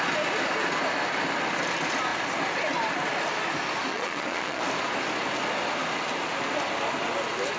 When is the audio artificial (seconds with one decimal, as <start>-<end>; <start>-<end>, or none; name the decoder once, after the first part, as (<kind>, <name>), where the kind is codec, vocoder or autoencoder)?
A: 3.9-4.6 (vocoder, Vocos)

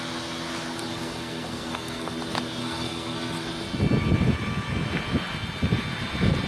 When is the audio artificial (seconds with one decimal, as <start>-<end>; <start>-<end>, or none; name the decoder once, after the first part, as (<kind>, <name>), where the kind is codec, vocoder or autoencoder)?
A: 0.9-2.1 (codec, SNAC); 2.6-3.5